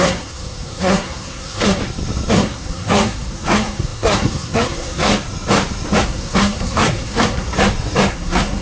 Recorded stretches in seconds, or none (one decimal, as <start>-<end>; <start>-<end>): 1.8-2.3; 5.1-6.0; 7.5-8.1